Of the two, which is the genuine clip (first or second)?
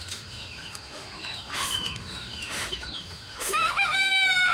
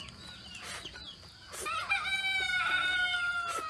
second